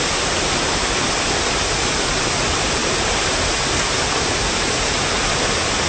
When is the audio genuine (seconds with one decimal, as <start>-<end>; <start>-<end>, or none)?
0.0-5.9